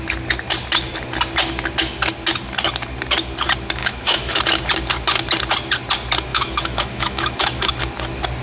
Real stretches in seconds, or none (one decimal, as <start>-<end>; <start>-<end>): 0.0-3.8; 4.4-6.3; 7.7-8.4